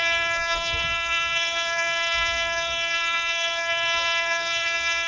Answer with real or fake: fake